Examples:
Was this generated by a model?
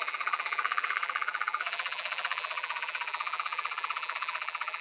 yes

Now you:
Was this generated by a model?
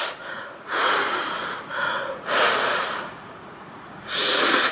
yes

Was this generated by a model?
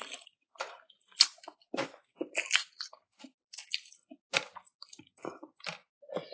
no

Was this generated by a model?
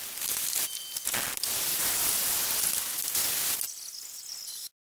no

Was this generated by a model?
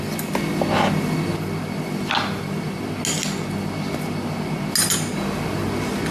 no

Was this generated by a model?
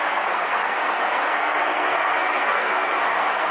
yes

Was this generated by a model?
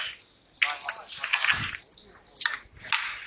no